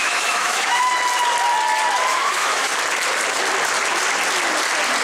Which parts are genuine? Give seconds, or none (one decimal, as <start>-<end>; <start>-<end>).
0.9-2.1; 2.7-5.0